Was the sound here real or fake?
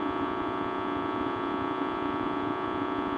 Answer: fake